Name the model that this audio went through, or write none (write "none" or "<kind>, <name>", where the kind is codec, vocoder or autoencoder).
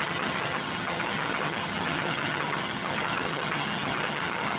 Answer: vocoder, HiFi-GAN